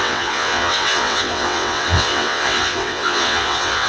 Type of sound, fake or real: fake